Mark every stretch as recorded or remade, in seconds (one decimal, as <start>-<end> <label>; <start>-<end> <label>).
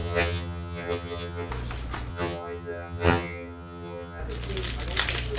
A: 0.0-1.5 remade; 1.5-2.1 recorded; 2.1-4.2 remade; 4.2-5.4 recorded